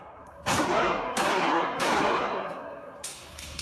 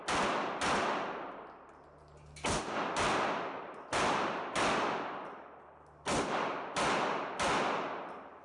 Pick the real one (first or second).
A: second